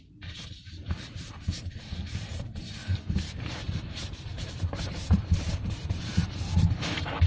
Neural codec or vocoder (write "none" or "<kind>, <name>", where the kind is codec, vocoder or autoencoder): vocoder, BigVGAN v2